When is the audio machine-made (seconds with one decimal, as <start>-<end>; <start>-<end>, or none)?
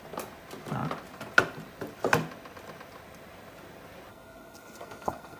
4.1-5.4